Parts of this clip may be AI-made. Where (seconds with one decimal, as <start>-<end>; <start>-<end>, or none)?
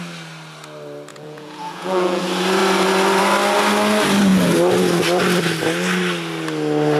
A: 1.1-2.2